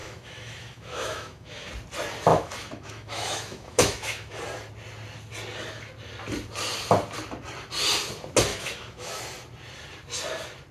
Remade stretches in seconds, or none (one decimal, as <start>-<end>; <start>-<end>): 0.0-1.7; 2.3-4.4; 8.5-9.2

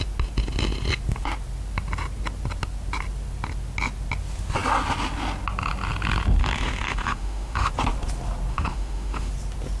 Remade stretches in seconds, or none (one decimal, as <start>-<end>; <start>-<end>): 6.4-7.7; 8.5-9.3